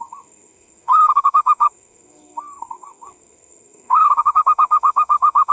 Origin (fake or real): fake